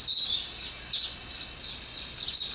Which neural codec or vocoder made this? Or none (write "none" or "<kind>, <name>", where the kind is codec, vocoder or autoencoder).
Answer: none